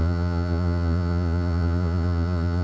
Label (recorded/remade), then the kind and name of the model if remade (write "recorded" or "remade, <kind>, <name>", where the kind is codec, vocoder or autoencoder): remade, vocoder, Vocos